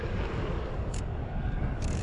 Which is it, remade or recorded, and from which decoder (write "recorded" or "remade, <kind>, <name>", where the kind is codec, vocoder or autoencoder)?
remade, codec, DAC